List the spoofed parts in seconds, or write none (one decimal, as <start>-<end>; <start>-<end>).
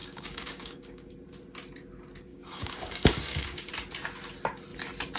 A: 0.0-1.1; 2.3-3.7